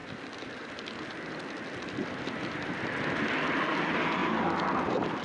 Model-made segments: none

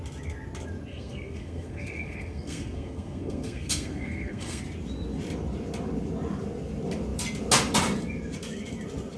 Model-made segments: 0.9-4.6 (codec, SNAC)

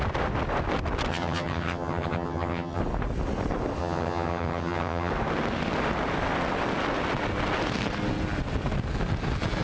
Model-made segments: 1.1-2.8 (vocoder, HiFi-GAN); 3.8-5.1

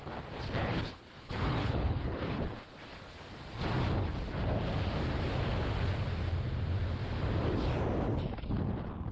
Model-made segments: 0.6-2.4 (codec, HILCodec)